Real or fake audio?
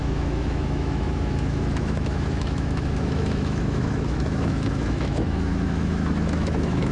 fake